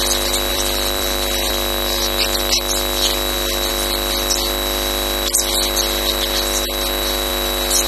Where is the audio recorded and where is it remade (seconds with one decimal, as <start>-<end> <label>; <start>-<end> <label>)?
0.0-0.5 recorded; 0.5-1.5 remade; 1.5-7.9 recorded